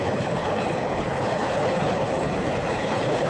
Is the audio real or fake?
fake